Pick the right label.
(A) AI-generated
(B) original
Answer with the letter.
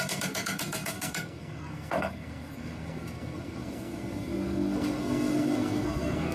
A